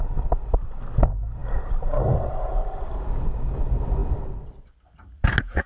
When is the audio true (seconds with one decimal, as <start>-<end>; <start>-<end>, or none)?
0.0-5.7